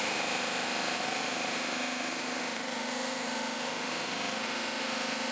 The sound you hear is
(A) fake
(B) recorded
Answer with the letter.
A